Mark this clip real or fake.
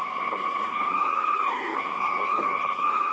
fake